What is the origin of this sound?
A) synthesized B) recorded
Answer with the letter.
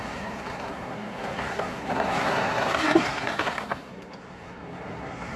A